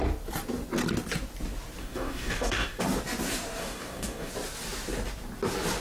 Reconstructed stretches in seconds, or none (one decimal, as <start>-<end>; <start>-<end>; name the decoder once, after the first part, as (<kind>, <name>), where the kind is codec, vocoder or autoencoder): 1.8-2.8 (codec, DAC); 3.6-4.3